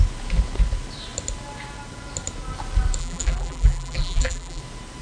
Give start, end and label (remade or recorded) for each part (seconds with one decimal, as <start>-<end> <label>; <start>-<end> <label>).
0.0-3.0 recorded; 3.0-4.6 remade; 4.6-5.0 recorded